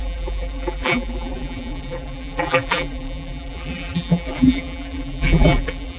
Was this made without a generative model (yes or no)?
no